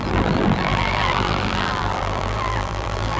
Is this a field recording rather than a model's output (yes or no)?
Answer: no